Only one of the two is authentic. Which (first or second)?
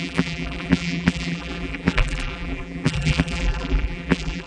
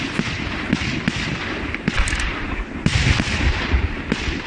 second